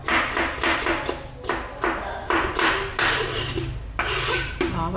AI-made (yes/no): no